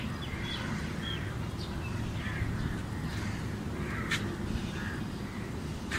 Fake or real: fake